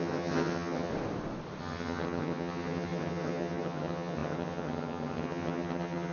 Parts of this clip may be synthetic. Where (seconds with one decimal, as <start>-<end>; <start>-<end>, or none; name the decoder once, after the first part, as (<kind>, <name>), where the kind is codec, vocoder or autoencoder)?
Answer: 0.0-0.9 (vocoder, HiFi-GAN); 1.6-6.1